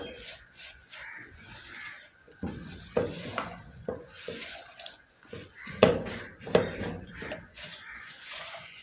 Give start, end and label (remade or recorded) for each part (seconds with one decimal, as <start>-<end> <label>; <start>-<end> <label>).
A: 0.0-5.9 remade; 5.9-7.0 recorded; 7.0-8.8 remade